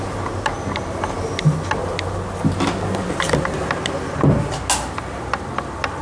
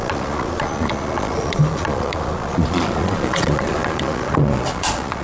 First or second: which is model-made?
second